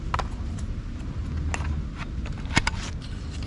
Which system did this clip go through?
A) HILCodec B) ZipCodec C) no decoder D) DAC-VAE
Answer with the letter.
C